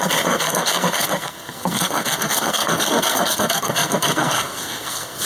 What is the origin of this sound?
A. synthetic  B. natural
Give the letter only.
A